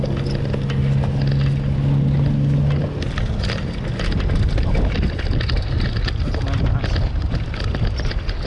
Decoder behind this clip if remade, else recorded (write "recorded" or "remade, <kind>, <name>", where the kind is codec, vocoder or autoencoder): recorded